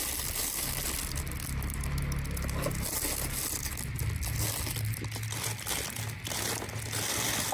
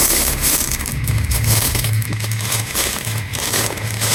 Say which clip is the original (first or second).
first